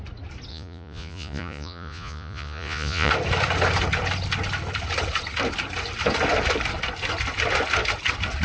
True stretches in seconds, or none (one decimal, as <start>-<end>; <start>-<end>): 0.0-0.5; 3.1-8.4